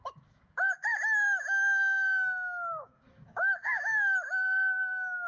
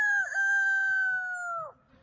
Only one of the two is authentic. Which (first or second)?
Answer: second